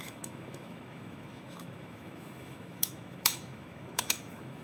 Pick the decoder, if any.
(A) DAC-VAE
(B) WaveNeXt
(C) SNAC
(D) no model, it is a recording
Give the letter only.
A